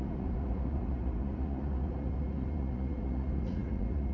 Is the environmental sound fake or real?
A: fake